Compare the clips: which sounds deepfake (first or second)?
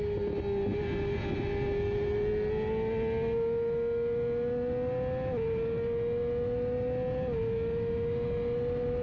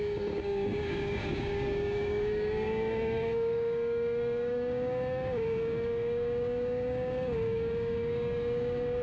second